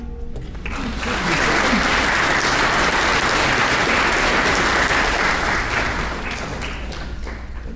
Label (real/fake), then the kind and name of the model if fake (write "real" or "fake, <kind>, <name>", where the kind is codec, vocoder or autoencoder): real